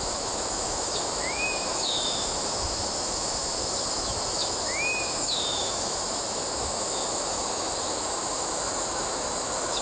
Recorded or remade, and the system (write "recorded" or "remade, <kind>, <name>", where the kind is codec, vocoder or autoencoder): remade, autoencoder, DAC-VAE